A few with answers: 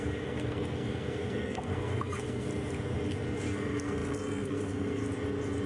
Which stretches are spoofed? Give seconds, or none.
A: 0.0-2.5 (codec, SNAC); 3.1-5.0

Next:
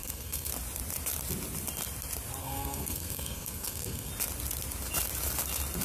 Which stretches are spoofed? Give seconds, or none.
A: 0.0-0.5 (codec, SNAC); 2.4-4.1

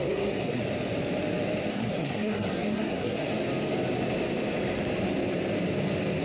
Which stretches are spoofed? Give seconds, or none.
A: 0.0-0.6 (codec, SNAC); 1.7-3.3